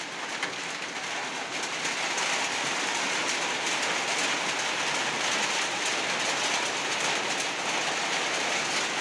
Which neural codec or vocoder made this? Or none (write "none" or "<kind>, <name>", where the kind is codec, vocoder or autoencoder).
none